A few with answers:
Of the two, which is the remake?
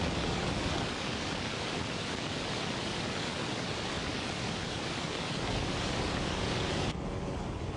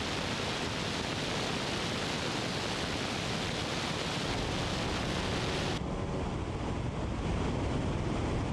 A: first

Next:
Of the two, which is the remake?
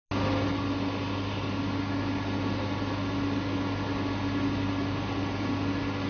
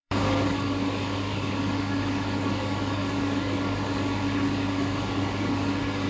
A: second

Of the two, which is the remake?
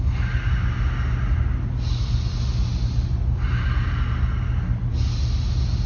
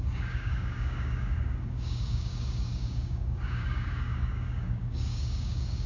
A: second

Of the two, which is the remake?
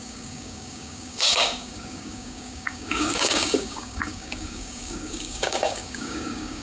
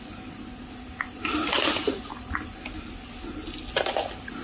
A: first